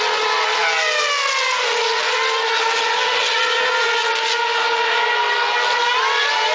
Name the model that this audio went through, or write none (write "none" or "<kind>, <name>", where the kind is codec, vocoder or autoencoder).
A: none